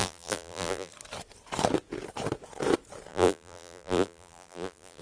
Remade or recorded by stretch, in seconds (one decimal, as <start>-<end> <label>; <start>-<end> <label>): 0.0-0.9 remade; 0.9-3.1 recorded; 3.1-5.0 remade